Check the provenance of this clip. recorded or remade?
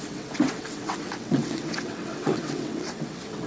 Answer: remade